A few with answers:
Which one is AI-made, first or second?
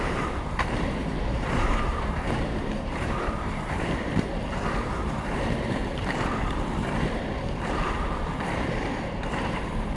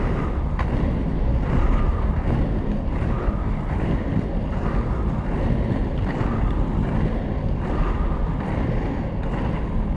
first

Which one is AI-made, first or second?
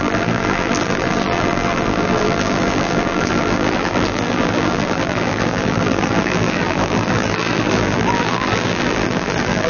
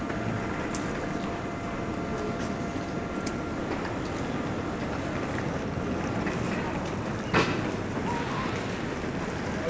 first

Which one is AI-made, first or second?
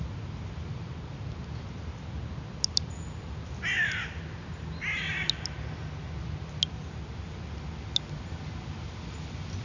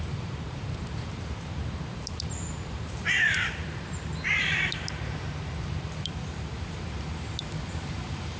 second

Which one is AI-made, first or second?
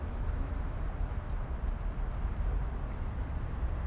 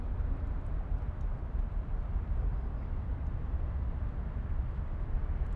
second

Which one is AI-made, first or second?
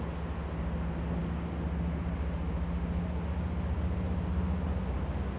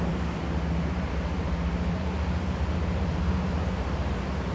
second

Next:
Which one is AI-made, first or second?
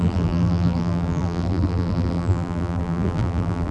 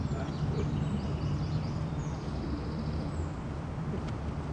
first